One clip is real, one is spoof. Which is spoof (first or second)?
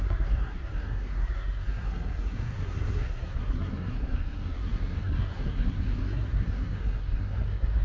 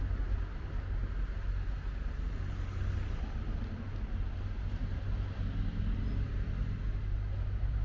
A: first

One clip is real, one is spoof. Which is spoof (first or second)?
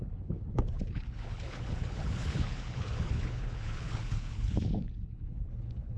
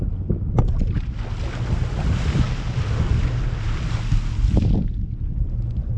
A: first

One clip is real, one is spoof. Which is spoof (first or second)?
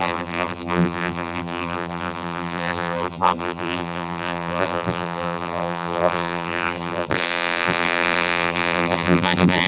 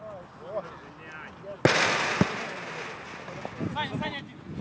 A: first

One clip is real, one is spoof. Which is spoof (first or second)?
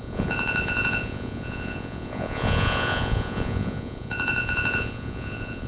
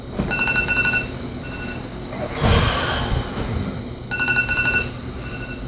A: first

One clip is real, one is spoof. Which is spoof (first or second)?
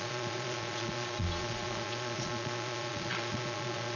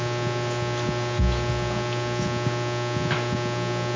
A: first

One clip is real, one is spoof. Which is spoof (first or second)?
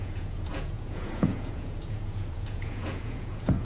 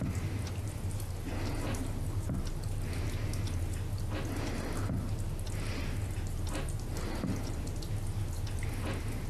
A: first